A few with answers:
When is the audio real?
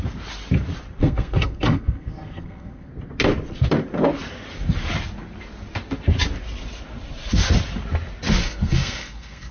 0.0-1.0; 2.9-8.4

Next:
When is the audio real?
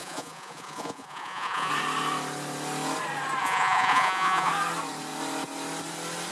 1.7-3.4; 4.5-6.3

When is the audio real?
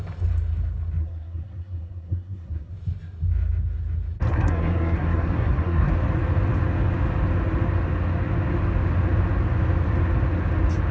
0.0-1.0; 2.7-4.3; 5.9-10.9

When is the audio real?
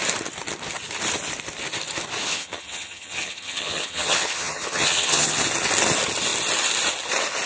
0.0-2.2; 5.4-7.5